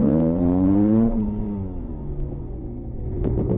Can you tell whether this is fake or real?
fake